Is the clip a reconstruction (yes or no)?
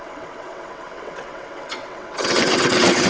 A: yes